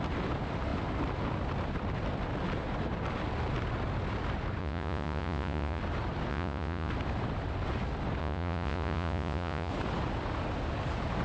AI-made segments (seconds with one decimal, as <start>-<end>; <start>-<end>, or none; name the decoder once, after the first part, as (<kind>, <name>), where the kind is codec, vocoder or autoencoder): 4.6-5.8 (vocoder, Vocos); 6.3-6.9; 8.2-9.7